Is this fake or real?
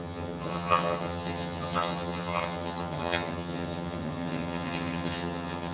fake